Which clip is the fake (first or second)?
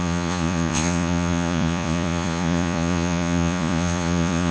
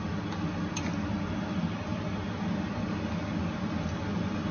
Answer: first